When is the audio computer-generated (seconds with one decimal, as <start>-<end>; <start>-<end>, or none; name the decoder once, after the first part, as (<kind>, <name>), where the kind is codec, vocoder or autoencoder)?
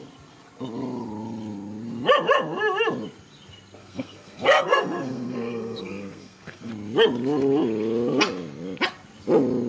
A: 3.8-6.7 (codec, SNAC)